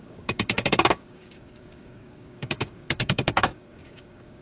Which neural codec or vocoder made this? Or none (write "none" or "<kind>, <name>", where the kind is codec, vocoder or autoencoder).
codec, DAC